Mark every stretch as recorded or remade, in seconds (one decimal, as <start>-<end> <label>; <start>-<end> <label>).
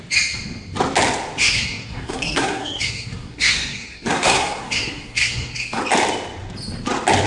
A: 0.0-1.4 recorded; 1.4-5.8 remade; 5.8-7.3 recorded